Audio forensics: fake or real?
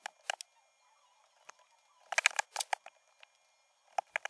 real